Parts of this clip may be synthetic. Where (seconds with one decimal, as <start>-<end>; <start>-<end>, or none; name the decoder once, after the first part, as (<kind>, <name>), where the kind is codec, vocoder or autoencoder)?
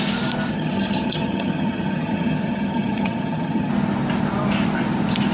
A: 0.5-3.7 (vocoder, HiFi-GAN)